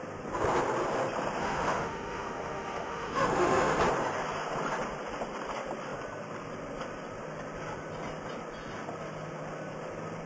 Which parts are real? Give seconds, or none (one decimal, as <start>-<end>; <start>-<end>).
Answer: 0.0-1.4; 3.8-10.3